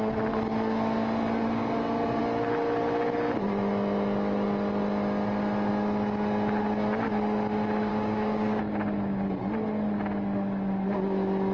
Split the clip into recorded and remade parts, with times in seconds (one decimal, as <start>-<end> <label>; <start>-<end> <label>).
0.0-7.9 recorded; 7.9-8.6 remade; 8.6-11.5 recorded